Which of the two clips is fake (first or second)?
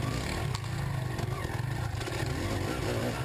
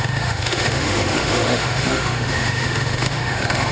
second